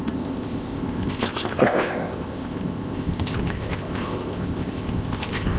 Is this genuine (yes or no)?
no